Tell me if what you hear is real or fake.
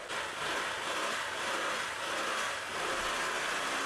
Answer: real